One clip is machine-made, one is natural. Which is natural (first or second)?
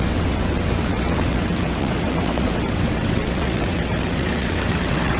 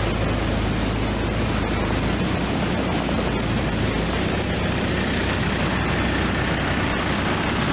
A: second